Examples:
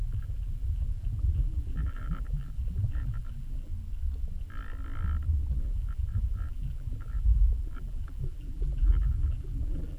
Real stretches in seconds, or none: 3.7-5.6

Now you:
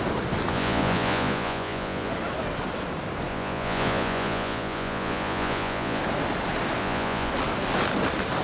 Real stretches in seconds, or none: 0.0-0.5; 2.1-3.3; 6.0-6.8; 7.3-8.4

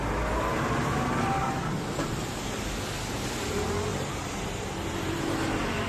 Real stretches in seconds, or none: 0.0-1.4; 2.1-3.9

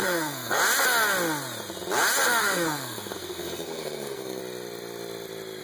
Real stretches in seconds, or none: 0.6-2.4; 4.4-5.6

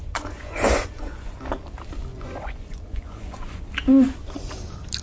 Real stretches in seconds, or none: 1.4-2.1; 3.6-5.0

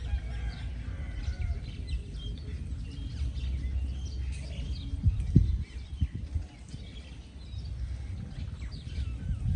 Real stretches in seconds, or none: 0.0-9.6